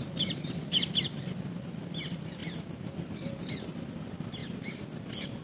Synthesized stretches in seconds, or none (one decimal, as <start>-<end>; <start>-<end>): 0.0-2.4; 3.6-4.4